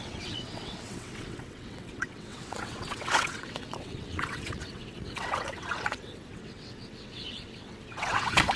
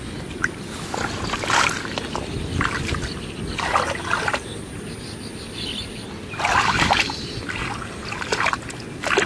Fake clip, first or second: first